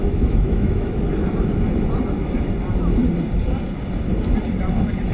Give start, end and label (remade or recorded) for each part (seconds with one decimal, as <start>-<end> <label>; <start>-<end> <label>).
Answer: 0.0-1.0 remade; 1.0-5.1 recorded

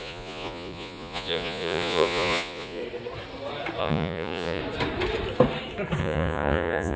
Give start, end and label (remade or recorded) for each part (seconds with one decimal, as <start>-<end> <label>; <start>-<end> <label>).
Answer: 0.0-2.8 remade; 2.8-3.8 recorded; 3.8-4.6 remade; 4.6-6.0 recorded; 6.0-7.0 remade

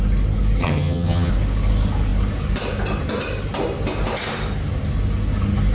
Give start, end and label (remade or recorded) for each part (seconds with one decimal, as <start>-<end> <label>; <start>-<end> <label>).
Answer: 0.0-0.6 recorded; 0.6-1.3 remade; 1.3-5.7 recorded

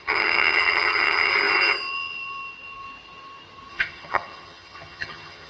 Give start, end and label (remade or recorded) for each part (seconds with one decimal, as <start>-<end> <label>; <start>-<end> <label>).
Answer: 0.0-1.3 remade; 1.3-3.7 recorded; 3.7-5.5 remade